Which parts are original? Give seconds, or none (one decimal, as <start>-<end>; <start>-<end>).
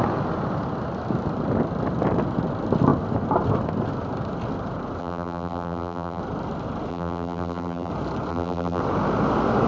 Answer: 0.0-5.0; 6.2-6.9; 7.9-8.3; 8.8-9.7